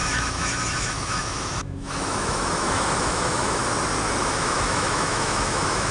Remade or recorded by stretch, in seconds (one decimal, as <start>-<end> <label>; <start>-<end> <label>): 0.0-3.6 remade; 3.6-4.2 recorded; 4.2-5.9 remade